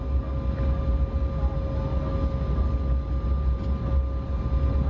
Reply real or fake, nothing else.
real